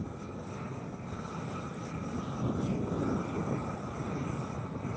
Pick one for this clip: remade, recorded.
recorded